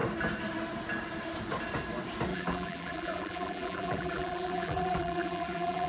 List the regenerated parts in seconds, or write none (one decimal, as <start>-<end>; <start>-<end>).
2.3-5.9